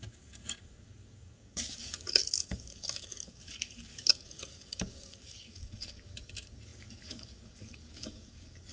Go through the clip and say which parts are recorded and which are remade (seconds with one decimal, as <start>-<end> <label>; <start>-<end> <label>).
0.0-8.7 remade